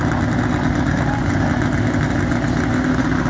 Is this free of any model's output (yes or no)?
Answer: yes